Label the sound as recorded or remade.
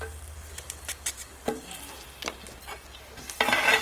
recorded